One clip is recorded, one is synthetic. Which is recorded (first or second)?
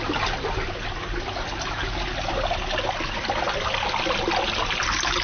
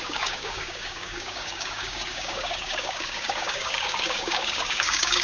first